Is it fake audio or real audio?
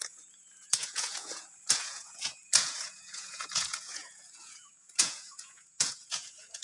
fake